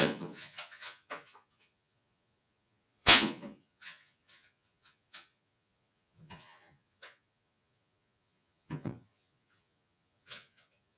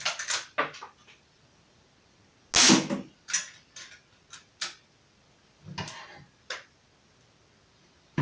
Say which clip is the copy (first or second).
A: first